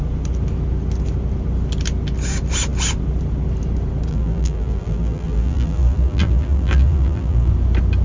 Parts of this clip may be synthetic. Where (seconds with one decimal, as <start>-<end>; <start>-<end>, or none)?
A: 4.1-7.5